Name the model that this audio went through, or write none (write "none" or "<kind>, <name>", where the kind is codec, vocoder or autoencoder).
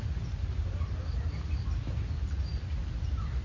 none